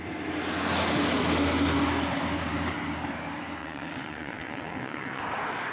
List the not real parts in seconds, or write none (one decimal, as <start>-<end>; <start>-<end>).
3.6-5.2